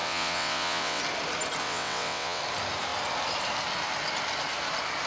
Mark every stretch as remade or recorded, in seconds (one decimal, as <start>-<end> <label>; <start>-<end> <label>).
0.0-1.0 remade; 1.0-1.6 recorded; 1.6-2.4 remade; 2.4-5.1 recorded